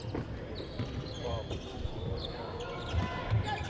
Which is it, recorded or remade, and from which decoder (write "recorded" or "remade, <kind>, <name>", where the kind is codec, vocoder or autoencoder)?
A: recorded